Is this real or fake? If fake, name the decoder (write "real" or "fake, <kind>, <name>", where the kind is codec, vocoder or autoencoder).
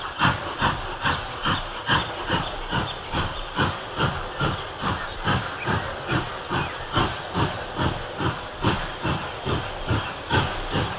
real